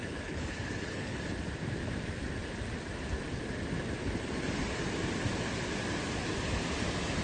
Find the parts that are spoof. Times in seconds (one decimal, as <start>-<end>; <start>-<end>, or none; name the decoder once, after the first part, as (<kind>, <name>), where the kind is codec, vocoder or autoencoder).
0.0-1.2 (codec, HILCodec)